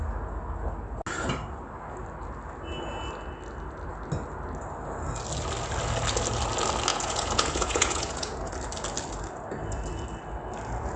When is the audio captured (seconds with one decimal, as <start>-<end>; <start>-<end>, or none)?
0.0-6.9; 8.5-11.0